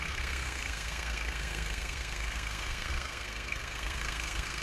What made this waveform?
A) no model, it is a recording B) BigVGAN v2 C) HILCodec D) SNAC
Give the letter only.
D